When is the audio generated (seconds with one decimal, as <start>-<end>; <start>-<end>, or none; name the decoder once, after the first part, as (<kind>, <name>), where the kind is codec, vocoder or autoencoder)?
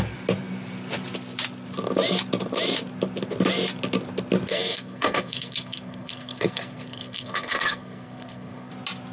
4.5-8.7 (codec, SNAC)